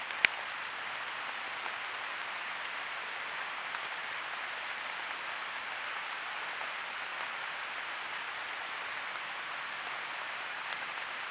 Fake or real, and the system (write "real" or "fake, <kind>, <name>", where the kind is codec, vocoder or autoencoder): real